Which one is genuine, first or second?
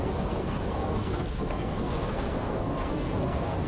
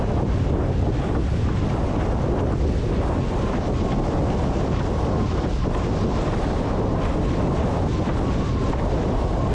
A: second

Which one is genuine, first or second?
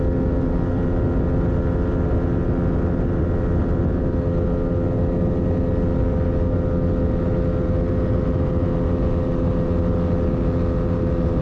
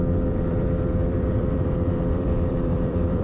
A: first